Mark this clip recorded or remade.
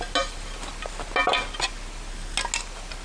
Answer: recorded